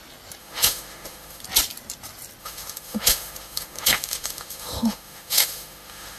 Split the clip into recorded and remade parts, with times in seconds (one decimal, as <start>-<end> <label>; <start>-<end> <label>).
0.0-0.4 recorded; 0.4-1.4 remade; 1.4-2.4 recorded; 2.4-6.2 remade